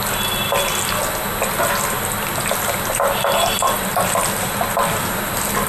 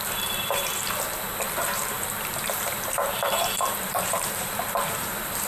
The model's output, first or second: second